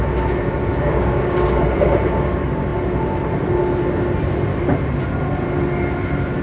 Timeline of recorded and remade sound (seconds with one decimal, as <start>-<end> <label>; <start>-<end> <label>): 0.0-0.6 recorded; 0.6-1.5 remade; 1.5-6.4 recorded